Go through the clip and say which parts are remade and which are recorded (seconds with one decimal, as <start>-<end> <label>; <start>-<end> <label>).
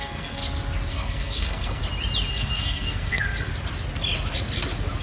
0.0-0.4 remade; 0.4-0.9 recorded; 0.9-1.8 remade; 1.8-2.3 recorded; 2.3-3.5 remade; 3.5-5.0 recorded